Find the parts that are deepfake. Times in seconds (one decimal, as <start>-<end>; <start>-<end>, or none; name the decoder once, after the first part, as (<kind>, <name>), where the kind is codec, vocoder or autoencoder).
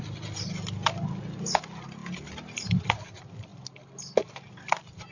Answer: 0.0-3.5 (vocoder, BigVGAN v2); 4.5-5.1